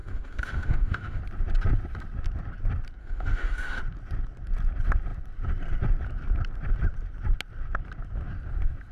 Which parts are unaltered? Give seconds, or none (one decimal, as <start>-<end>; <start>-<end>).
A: 1.2-3.0; 3.8-8.9